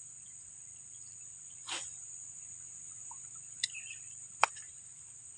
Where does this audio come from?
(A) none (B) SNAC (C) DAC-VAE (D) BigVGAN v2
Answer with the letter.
D